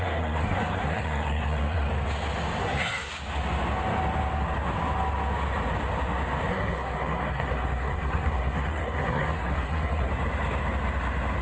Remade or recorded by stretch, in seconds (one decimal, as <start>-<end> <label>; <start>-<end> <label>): 0.0-1.9 remade; 1.9-2.6 recorded; 2.6-3.1 remade; 3.1-6.5 recorded; 6.5-10.1 remade; 10.1-11.4 recorded